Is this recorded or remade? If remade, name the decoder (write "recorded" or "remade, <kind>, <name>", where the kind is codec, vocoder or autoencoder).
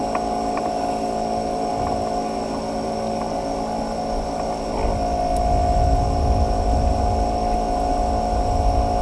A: recorded